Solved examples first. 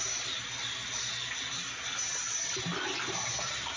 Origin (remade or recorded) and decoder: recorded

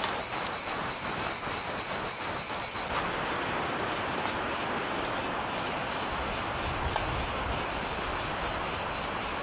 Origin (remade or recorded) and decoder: recorded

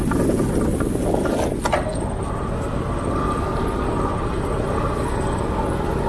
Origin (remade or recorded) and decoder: recorded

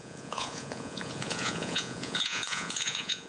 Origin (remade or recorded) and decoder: remade, vocoder, Vocos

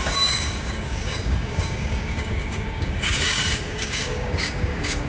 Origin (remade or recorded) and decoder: remade, codec, DAC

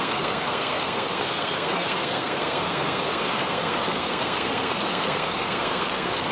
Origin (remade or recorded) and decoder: remade, codec, SNAC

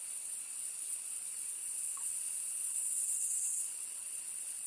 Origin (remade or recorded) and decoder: remade, vocoder, WaveNeXt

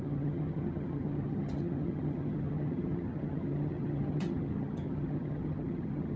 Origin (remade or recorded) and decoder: remade, vocoder, HiFi-GAN